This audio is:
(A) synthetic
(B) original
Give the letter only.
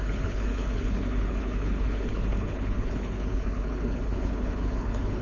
A